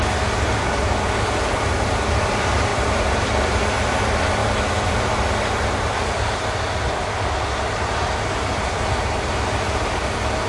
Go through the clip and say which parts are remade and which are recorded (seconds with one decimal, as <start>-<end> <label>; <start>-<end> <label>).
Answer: 0.0-2.7 recorded; 2.7-3.6 remade; 3.6-10.5 recorded